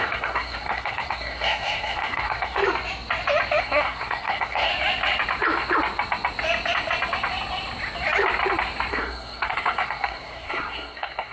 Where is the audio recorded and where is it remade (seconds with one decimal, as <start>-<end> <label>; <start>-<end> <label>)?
0.0-2.6 remade; 2.6-3.6 recorded; 3.6-4.7 remade; 4.7-8.9 recorded; 8.9-11.3 remade